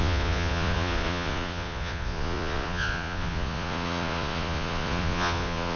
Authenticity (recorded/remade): remade